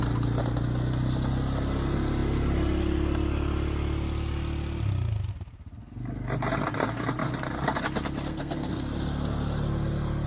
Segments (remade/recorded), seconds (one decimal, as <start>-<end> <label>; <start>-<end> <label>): 0.0-8.3 recorded; 8.3-8.8 remade; 8.8-10.3 recorded